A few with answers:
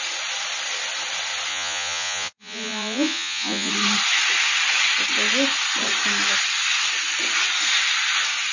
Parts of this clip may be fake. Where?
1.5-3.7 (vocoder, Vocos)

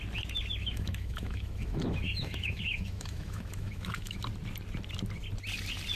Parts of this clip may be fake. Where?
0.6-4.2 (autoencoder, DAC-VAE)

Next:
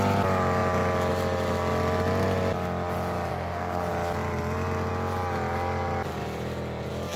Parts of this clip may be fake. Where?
3.3-3.9 (codec, SNAC)

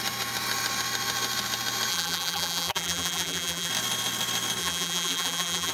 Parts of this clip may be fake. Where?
1.9-3.7 (vocoder, BigVGAN v2); 4.6-5.7